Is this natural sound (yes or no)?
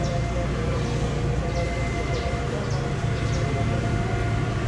yes